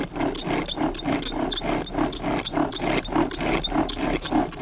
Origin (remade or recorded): recorded